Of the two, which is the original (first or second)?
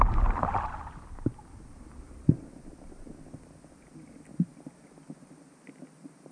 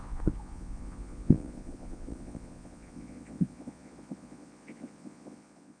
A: first